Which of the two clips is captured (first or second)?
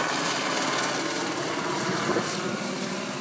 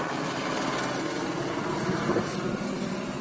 second